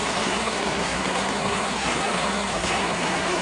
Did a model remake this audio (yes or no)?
yes